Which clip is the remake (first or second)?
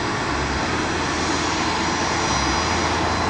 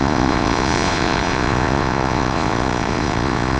second